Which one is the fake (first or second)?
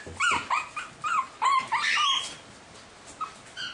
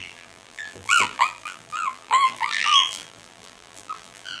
second